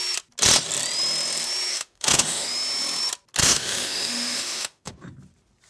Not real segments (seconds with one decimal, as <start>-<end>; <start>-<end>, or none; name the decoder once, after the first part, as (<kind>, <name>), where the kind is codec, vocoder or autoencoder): 1.7-2.5 (autoencoder, DAC-VAE); 3.4-4.9